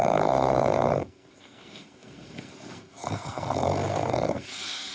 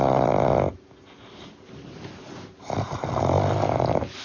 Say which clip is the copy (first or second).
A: first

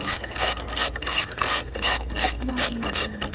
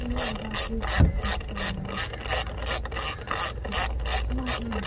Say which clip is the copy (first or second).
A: first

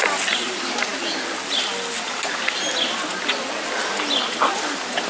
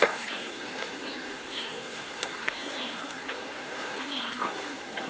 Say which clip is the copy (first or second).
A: second